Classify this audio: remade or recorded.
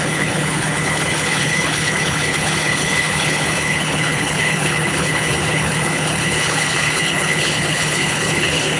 remade